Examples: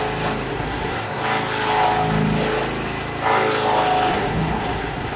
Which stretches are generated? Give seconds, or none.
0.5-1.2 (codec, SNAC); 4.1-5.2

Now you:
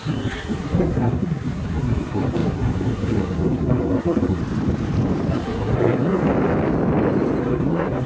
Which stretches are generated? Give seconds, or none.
0.0-4.4 (codec, SNAC); 5.3-6.2; 7.4-8.1